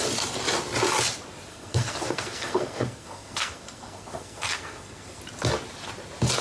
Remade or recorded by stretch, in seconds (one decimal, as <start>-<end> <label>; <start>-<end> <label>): 0.0-1.5 recorded; 1.5-5.2 remade; 5.2-6.4 recorded